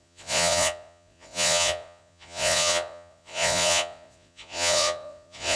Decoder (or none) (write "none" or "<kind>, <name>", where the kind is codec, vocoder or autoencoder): vocoder, Vocos